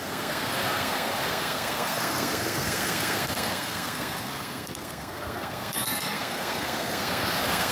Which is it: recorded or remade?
remade